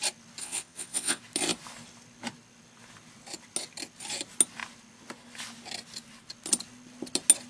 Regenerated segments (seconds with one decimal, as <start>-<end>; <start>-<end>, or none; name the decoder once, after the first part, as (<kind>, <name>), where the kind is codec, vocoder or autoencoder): 0.4-1.2 (vocoder, Vocos)

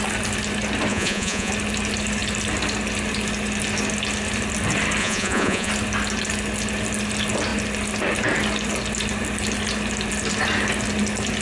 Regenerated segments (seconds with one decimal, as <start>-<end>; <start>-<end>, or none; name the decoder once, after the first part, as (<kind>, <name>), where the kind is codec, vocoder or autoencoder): 0.9-1.5 (vocoder, Vocos); 5.0-5.7

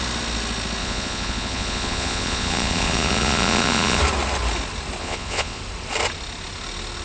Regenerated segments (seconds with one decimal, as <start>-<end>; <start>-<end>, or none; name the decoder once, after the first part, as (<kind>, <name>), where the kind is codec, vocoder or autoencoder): 0.8-4.0 (vocoder, Vocos); 5.0-5.6

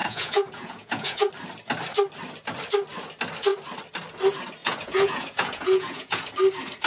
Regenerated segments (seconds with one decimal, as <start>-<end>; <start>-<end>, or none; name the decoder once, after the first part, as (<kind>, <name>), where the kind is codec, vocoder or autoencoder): 0.0-1.3 (vocoder, Vocos); 4.6-6.3

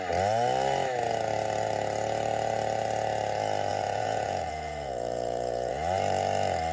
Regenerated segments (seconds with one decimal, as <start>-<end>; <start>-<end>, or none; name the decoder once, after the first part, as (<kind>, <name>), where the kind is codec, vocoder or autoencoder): 3.7-5.7 (vocoder, Vocos)